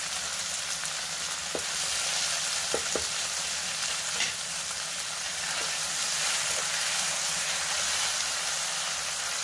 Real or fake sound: real